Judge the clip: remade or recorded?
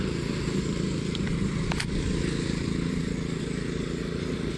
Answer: recorded